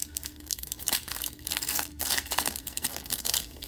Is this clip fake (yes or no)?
yes